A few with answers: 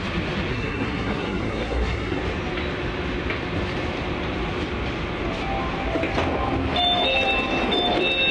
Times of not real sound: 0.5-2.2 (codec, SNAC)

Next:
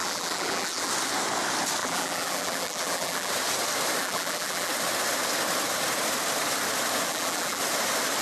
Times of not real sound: 0.0-0.9 (vocoder, BigVGAN v2); 1.8-3.3; 4.0-4.7; 7.1-7.6

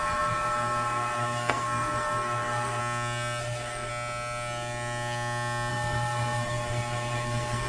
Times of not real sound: 0.0-2.8 (codec, SNAC); 3.4-3.9; 5.7-7.7

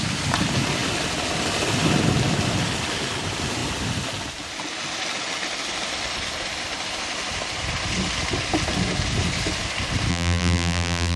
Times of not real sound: 10.1-11.2 (vocoder, BigVGAN v2)

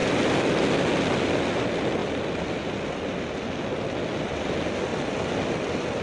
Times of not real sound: none

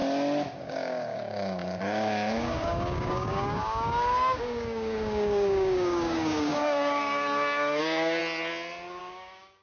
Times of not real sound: 0.6-8.2 (codec, DAC); 9.0-9.6

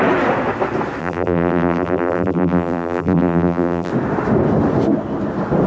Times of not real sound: 1.0-3.9 (vocoder, BigVGAN v2)